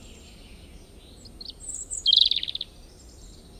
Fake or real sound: real